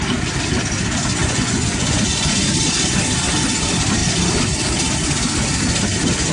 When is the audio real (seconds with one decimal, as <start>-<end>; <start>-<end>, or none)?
0.0-1.2; 2.0-6.3